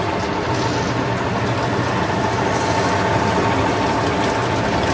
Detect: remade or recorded recorded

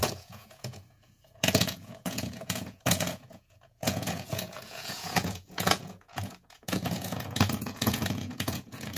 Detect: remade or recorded remade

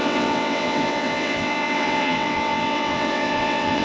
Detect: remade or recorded remade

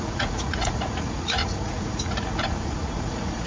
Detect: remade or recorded remade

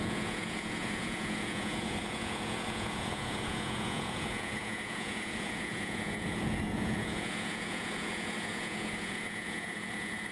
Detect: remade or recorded remade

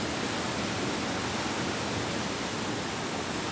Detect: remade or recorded recorded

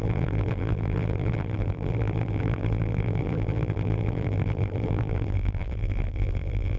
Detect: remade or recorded remade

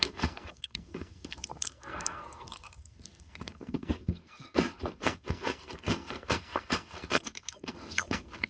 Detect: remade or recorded remade